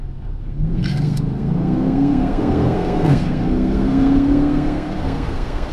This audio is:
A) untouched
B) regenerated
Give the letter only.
B